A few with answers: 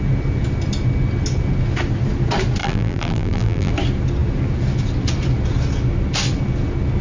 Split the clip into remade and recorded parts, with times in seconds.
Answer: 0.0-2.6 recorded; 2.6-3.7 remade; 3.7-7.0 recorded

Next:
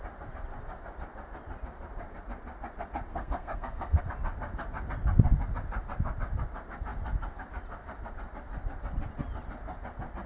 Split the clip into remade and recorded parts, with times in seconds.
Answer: 0.0-3.1 recorded; 3.1-4.0 remade; 4.0-10.3 recorded

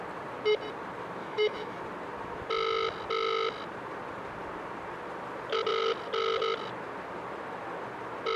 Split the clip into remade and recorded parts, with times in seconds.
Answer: 0.0-1.2 recorded; 1.2-1.8 remade; 1.8-8.4 recorded

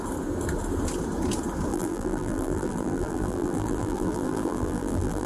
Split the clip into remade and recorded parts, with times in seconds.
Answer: 0.0-1.7 recorded; 1.7-5.3 remade

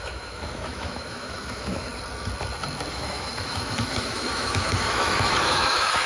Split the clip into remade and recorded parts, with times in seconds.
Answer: 0.0-1.9 remade; 1.9-2.9 recorded; 2.9-6.1 remade